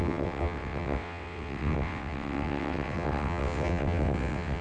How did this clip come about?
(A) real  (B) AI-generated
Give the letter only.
B